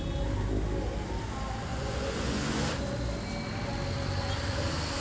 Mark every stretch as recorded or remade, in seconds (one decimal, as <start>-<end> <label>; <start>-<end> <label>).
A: 0.0-1.7 recorded; 1.7-2.7 remade; 2.7-5.0 recorded